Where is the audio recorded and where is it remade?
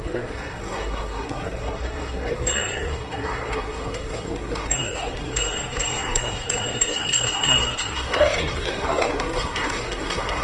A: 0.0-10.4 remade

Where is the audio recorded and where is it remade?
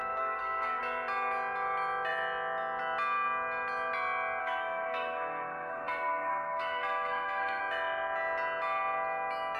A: 0.0-0.8 remade; 0.8-4.4 recorded; 4.4-7.6 remade; 7.6-9.6 recorded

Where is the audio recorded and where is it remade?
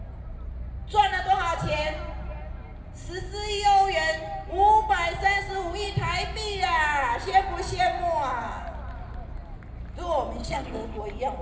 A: 0.0-10.4 recorded; 10.4-11.0 remade; 11.0-11.4 recorded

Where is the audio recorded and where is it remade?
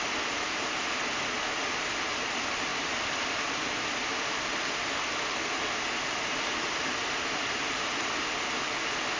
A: 0.0-9.2 recorded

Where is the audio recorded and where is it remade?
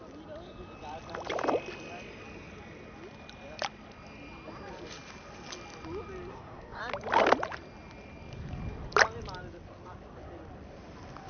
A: 0.0-6.3 recorded; 6.3-6.8 remade; 6.8-11.3 recorded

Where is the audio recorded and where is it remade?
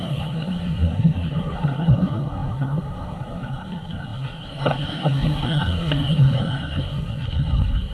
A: 0.0-7.9 remade